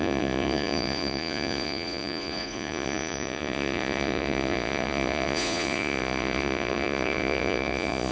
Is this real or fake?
fake